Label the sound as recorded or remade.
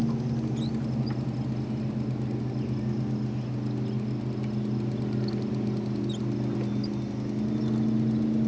recorded